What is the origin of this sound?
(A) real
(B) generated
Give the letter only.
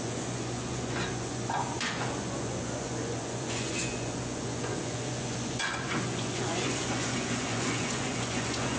B